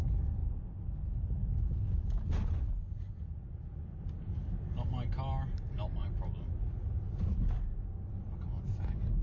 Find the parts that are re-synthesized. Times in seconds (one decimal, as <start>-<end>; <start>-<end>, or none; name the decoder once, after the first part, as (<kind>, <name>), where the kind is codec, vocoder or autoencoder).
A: none